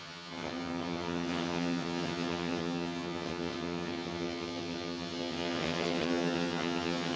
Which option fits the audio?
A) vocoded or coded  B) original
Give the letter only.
A